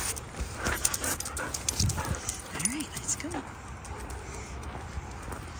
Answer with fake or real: real